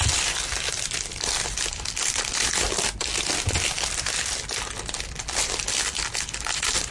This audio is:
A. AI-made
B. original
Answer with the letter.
A